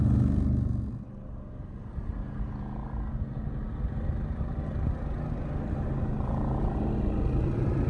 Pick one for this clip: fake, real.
real